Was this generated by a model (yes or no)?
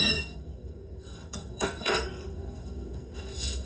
yes